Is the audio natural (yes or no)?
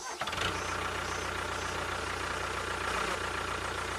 yes